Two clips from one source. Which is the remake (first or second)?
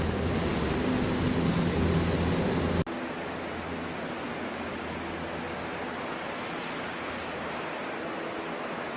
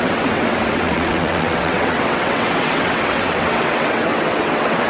second